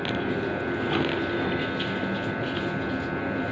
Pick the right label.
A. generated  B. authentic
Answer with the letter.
B